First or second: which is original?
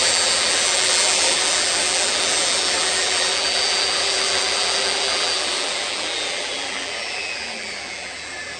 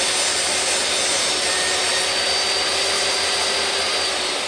second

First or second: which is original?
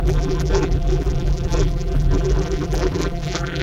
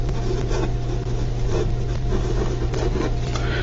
second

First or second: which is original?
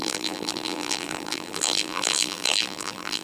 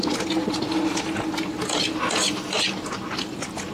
second